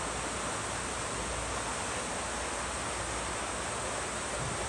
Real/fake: real